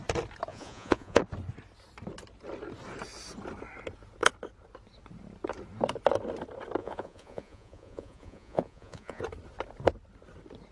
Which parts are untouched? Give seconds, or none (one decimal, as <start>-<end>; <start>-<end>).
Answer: 0.0-0.5; 1.2-6.8; 9.2-10.7